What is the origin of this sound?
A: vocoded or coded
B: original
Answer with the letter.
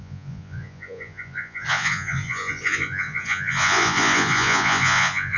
A